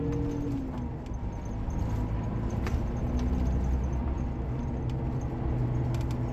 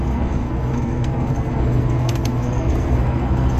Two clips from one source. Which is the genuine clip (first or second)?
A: first